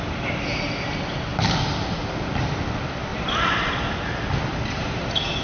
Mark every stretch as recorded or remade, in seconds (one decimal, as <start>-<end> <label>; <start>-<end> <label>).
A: 0.0-3.1 recorded; 3.1-3.7 remade; 3.7-5.4 recorded